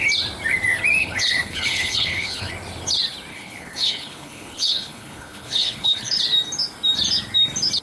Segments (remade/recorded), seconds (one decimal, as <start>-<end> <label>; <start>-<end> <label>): 0.0-1.0 recorded; 1.0-2.5 remade; 2.5-3.3 recorded; 3.3-6.2 remade; 6.2-7.8 recorded